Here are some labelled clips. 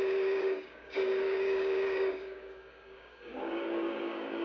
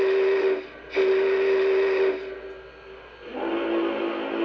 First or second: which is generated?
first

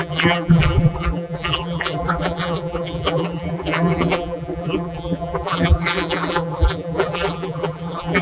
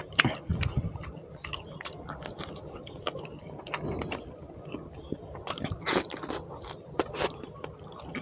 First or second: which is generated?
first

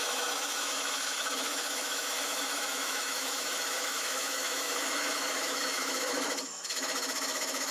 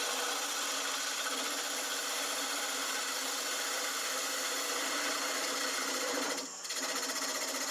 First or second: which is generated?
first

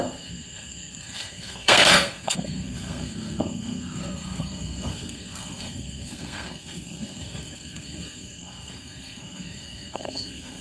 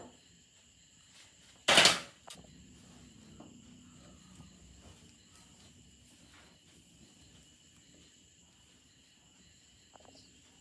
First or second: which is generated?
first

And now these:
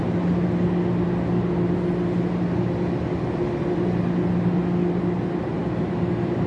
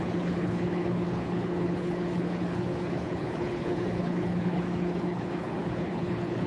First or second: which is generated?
second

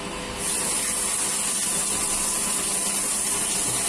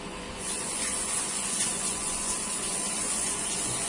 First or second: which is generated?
second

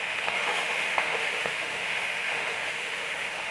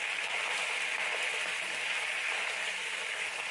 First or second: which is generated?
first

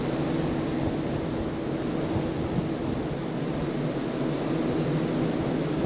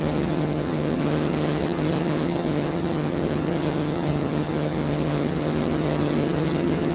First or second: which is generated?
second